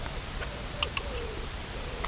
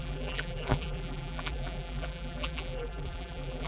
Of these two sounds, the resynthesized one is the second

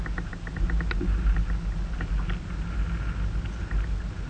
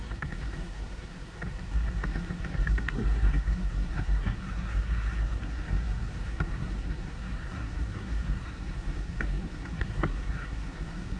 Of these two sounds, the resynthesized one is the second